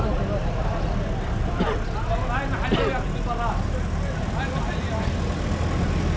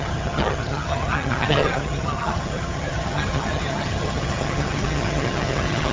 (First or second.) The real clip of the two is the first